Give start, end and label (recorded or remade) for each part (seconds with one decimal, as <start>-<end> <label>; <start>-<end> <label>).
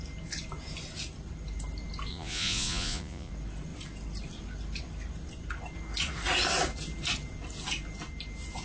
0.0-2.1 recorded; 2.1-3.3 remade; 3.3-8.6 recorded